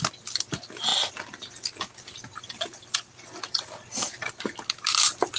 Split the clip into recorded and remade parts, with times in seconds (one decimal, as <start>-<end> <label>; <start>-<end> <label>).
0.0-5.4 recorded